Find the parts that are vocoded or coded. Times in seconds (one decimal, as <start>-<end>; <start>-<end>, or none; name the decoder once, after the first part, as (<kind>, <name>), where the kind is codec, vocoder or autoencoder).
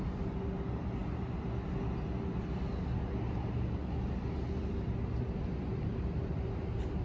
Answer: 5.7-7.0 (vocoder, BigVGAN v2)